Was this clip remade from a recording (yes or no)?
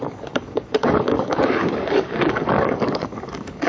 yes